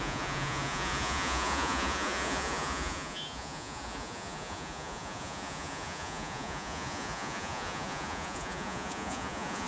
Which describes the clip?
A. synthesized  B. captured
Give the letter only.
A